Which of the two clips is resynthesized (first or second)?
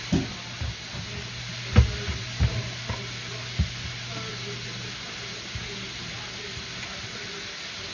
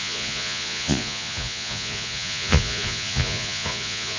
second